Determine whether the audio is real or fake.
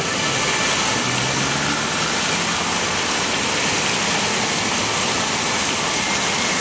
real